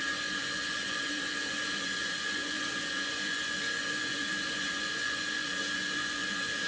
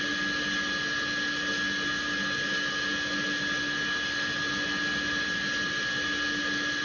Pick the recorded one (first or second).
second